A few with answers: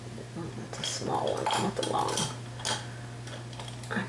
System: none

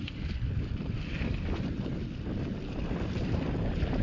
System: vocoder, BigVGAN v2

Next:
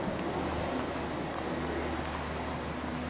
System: none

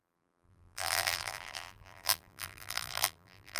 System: vocoder, BigVGAN v2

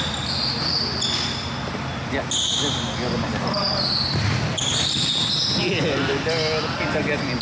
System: none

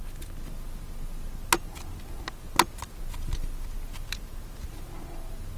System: none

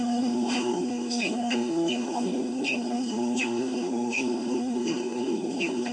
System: codec, SNAC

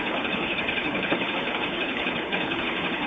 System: codec, HILCodec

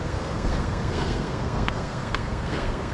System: codec, SNAC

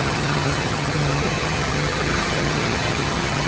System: vocoder, HiFi-GAN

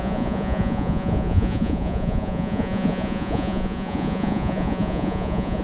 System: vocoder, Vocos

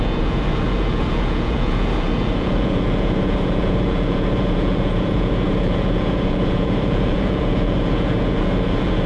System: vocoder, Vocos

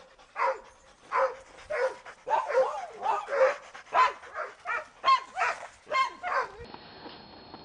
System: none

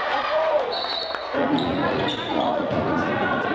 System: vocoder, Vocos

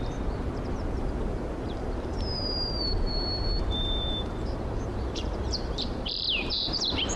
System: vocoder, BigVGAN v2